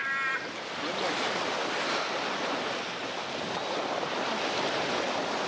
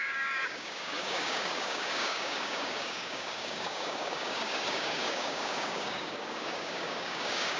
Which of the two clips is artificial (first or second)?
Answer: second